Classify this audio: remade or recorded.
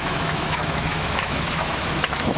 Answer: remade